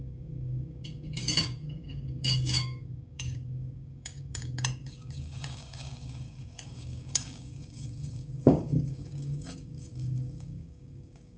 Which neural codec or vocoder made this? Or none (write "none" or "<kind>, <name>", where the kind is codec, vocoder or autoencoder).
codec, DAC